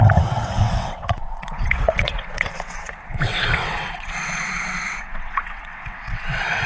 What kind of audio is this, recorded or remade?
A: remade